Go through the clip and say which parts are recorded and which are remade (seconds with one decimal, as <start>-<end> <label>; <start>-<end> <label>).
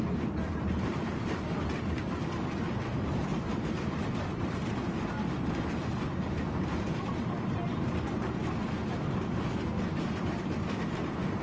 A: 0.0-6.1 remade; 6.1-6.6 recorded; 6.6-8.4 remade; 8.4-10.2 recorded; 10.2-11.4 remade